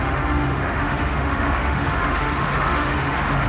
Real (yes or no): no